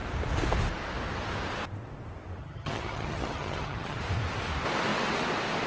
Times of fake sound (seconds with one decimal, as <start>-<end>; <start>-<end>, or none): 2.4-4.0